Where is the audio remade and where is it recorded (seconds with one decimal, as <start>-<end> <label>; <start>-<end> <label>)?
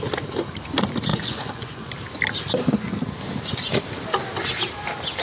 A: 0.0-1.1 recorded; 1.1-1.9 remade; 1.9-5.2 recorded